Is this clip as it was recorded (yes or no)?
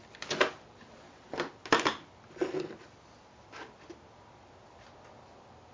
yes